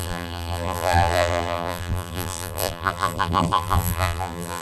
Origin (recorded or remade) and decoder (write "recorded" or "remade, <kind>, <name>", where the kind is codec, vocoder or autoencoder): remade, vocoder, BigVGAN v2